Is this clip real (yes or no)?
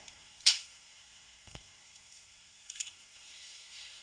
no